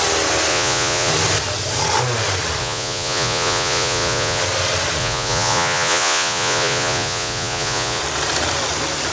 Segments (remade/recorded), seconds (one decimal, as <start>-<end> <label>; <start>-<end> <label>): 0.0-0.5 recorded; 0.5-1.1 remade; 1.1-2.6 recorded; 2.6-4.4 remade; 4.4-5.0 recorded; 5.0-8.0 remade; 8.0-9.1 recorded

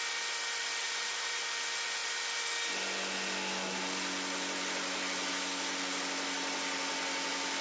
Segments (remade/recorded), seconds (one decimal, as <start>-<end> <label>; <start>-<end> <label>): 0.0-0.8 recorded; 0.8-1.4 remade; 1.4-7.6 recorded

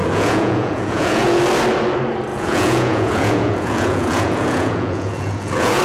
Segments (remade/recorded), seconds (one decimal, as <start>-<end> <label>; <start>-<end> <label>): 0.0-1.4 remade; 1.4-2.3 recorded; 2.3-5.8 remade

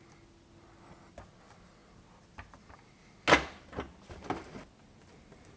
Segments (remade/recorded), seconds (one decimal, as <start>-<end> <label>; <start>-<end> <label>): 0.0-5.6 recorded

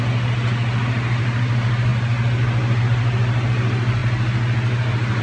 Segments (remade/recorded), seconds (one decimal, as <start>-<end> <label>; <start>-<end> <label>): 0.0-5.2 recorded

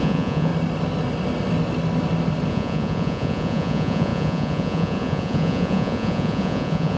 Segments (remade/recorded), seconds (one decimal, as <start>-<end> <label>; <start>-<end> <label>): 0.0-0.5 remade; 0.5-2.5 recorded; 2.5-7.0 remade

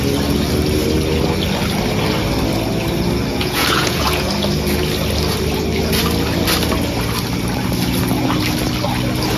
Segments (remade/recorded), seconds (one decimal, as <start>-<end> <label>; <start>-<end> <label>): 0.0-3.3 recorded; 3.3-4.3 remade; 4.3-9.4 recorded